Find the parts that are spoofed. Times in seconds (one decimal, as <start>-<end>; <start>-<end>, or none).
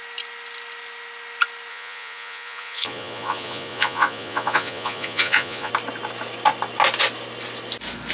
1.7-5.7